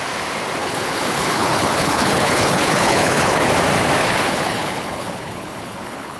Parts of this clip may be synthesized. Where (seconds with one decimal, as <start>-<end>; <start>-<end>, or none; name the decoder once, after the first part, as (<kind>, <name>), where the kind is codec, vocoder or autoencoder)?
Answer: 0.6-3.5 (codec, HILCodec); 4.0-6.2